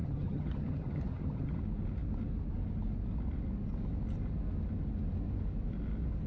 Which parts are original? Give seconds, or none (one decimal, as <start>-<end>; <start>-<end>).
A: 1.6-6.3